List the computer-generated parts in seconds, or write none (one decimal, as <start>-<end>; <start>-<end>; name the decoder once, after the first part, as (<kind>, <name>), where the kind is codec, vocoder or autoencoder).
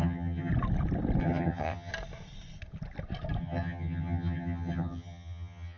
0.0-0.5 (vocoder, HiFi-GAN); 1.2-1.9; 3.4-5.8